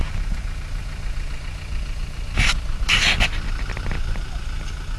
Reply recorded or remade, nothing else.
recorded